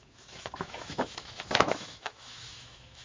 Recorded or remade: remade